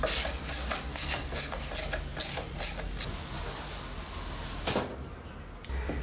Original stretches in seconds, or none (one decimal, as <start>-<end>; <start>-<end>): 0.0-0.9; 1.7-6.0